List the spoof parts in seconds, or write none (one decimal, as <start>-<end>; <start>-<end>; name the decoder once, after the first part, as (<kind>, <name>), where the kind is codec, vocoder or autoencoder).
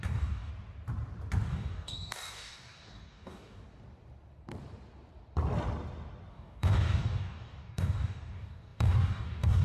0.0-0.5 (codec, DAC); 1.5-3.6; 6.3-9.6